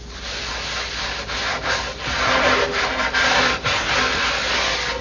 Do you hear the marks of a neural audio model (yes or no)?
no